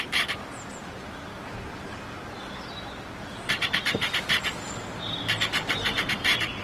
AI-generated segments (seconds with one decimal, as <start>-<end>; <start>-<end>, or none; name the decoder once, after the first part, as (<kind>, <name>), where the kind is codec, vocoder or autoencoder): none